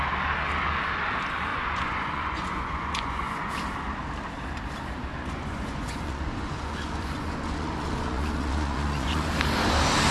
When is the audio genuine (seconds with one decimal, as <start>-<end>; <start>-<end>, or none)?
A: 0.0-1.5; 3.5-5.1; 9.3-10.1